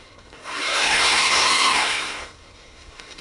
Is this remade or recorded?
remade